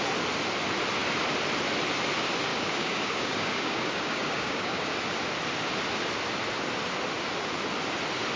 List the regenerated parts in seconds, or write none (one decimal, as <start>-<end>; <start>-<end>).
2.5-4.8